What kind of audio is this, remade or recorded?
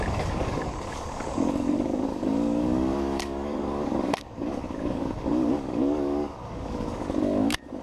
remade